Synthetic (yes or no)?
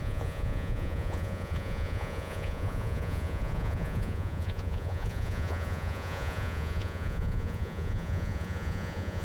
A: yes